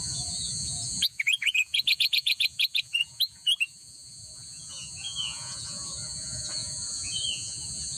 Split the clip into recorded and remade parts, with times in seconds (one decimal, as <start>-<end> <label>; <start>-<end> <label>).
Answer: 0.0-8.0 remade